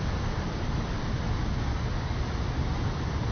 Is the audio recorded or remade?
remade